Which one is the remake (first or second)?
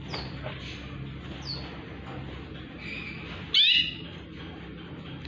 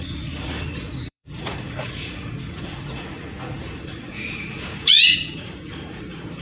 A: second